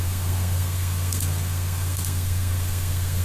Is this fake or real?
fake